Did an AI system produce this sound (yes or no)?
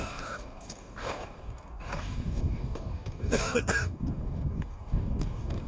yes